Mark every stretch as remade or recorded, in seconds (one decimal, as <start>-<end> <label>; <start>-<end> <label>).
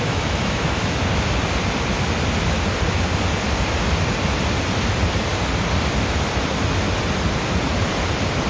0.0-1.0 remade; 1.0-8.5 recorded